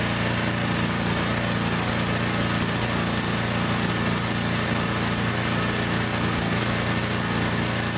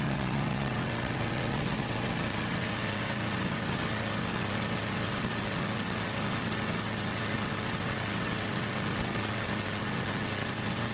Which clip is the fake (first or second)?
second